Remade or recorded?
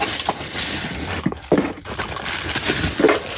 recorded